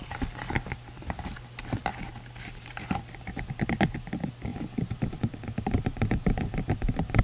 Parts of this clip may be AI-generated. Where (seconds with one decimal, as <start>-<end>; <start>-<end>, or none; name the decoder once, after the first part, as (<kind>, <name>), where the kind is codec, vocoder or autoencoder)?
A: none